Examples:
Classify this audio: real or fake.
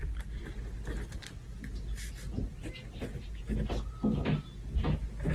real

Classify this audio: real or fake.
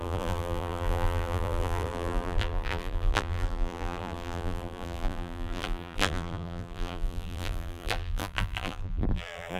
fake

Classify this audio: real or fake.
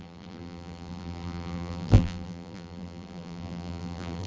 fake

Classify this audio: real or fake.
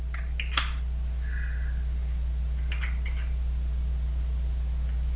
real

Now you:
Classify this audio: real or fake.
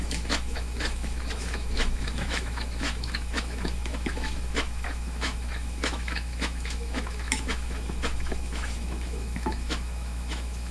fake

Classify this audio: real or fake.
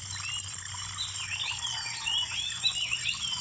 real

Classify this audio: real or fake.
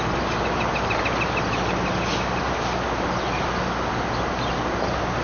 real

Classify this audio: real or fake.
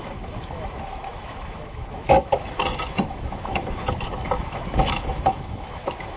fake